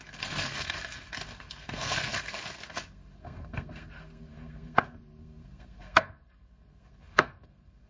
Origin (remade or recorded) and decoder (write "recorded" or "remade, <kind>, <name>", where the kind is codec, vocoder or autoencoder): remade, codec, SNAC